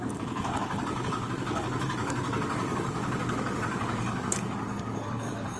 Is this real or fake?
fake